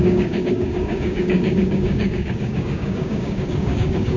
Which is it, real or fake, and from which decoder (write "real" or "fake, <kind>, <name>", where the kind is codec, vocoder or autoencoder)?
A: fake, codec, DAC